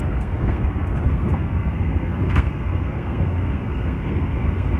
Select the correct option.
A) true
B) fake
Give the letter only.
B